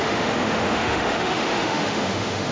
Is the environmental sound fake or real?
fake